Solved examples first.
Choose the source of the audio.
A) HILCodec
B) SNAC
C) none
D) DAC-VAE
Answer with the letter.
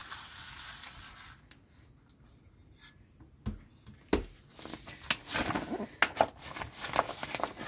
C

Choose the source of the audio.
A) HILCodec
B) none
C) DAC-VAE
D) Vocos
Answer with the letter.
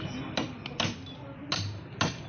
B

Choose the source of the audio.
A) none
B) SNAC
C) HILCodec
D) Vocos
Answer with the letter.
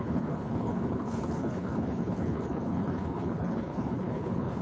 C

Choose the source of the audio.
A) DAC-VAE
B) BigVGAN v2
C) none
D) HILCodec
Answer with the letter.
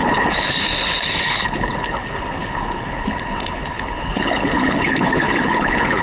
D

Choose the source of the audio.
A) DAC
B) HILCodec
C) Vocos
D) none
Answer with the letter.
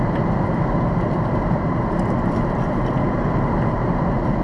D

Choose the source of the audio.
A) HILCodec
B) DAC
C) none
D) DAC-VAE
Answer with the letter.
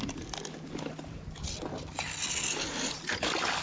C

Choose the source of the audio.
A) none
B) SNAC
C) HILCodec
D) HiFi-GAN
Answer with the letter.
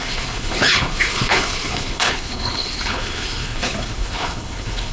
C